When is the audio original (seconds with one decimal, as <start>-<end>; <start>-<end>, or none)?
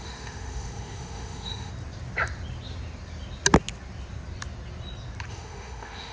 1.7-5.3